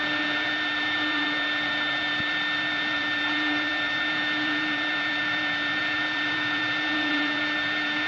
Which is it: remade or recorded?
remade